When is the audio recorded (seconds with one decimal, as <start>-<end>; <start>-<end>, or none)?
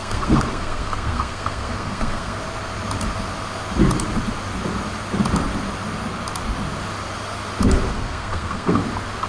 2.4-7.9; 8.8-9.3